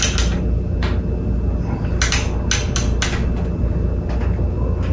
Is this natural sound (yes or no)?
yes